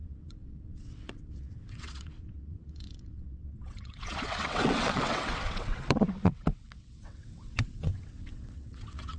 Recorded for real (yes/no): no